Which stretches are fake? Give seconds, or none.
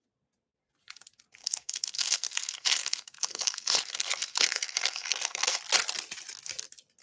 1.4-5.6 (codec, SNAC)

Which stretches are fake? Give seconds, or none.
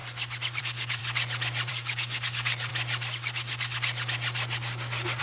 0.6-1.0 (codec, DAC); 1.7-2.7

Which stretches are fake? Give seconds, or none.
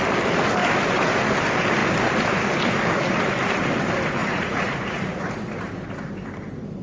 4.2-5.3 (vocoder, Vocos)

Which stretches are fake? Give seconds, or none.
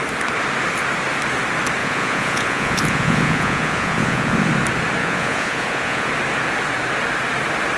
1.8-4.5 (vocoder, Vocos); 5.0-6.1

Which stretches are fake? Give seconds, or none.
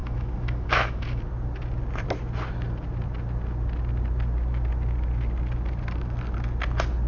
0.0-1.2 (autoencoder, DAC-VAE)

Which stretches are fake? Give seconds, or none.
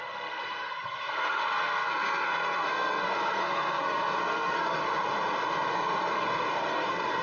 0.0-4.8 (codec, SNAC); 5.7-7.2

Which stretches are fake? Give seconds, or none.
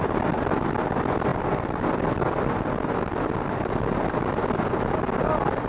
none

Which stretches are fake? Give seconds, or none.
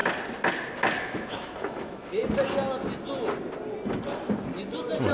1.0-2.2 (autoencoder, DAC-VAE)